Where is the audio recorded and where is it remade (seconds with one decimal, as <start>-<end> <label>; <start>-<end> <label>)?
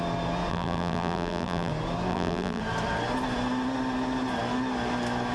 0.0-0.5 recorded; 0.5-1.7 remade; 1.7-2.1 recorded; 2.1-2.6 remade; 2.6-5.3 recorded